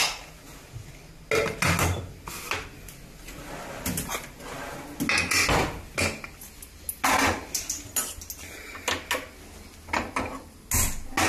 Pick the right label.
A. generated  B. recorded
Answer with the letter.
B